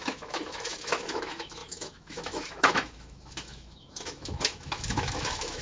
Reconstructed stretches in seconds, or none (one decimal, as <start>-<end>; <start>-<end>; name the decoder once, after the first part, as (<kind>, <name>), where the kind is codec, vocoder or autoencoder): 0.0-5.6 (autoencoder, DAC-VAE)